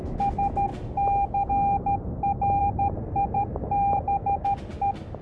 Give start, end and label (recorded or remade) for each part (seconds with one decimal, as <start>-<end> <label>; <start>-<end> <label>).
0.0-2.6 recorded; 2.6-4.0 remade; 4.0-5.2 recorded